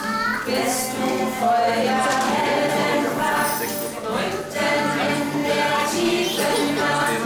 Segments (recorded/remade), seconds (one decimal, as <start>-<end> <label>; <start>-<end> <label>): 0.0-7.3 recorded